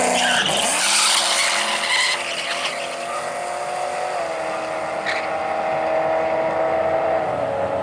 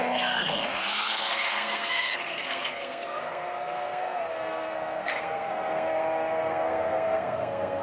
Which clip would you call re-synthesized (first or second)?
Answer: second